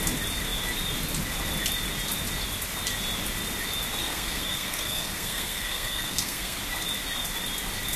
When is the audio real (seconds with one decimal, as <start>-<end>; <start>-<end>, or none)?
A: 0.0-4.0; 6.6-8.0